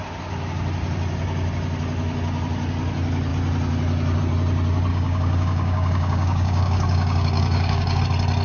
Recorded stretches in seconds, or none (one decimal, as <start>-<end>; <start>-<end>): 0.0-4.9; 8.0-8.4